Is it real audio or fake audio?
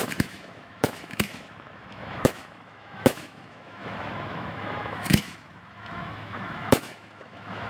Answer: fake